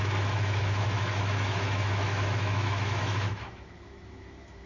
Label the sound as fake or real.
fake